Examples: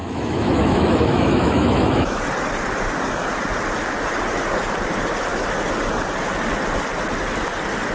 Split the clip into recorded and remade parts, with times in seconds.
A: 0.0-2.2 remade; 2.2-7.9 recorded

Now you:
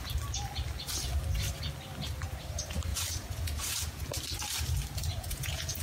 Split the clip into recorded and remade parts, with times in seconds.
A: 0.0-2.9 recorded; 2.9-4.0 remade; 4.0-5.0 recorded; 5.0-5.8 remade

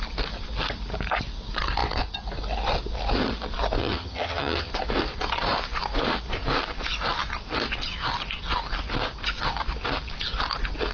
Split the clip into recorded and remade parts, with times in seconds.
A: 0.0-3.8 recorded; 3.8-4.7 remade; 4.7-10.9 recorded

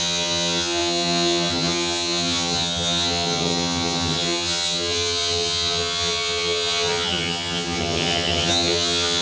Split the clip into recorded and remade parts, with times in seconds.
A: 0.0-9.2 remade

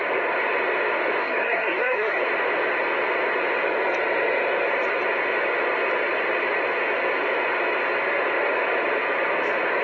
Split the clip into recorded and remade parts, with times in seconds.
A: 0.0-1.2 recorded; 1.2-2.2 remade; 2.2-9.8 recorded

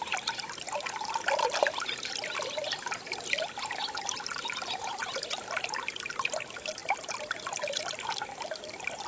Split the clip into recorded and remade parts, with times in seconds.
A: 0.0-9.1 recorded

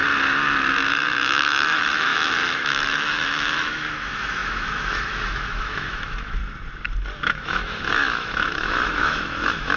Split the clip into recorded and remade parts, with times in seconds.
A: 0.0-0.9 recorded; 0.9-6.4 remade; 6.4-7.2 recorded; 7.2-9.8 remade

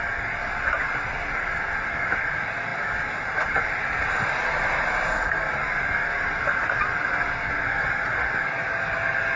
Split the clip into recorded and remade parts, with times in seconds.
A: 0.0-9.4 recorded